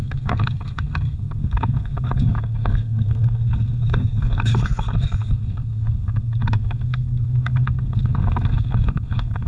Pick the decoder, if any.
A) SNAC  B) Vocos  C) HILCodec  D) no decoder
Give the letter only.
A